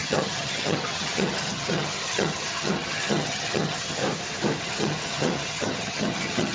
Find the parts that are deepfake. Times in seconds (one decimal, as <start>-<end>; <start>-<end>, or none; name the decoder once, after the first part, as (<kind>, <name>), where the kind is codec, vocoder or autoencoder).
0.0-4.0 (vocoder, HiFi-GAN); 4.6-6.5